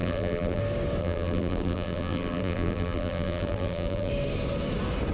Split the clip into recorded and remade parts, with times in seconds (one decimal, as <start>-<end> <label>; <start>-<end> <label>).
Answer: 0.0-0.6 remade; 0.6-1.0 recorded; 1.0-4.1 remade; 4.1-5.1 recorded